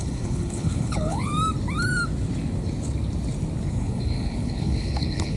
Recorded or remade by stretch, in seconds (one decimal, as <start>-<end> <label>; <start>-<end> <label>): 0.0-1.3 remade; 1.3-3.7 recorded; 3.7-5.4 remade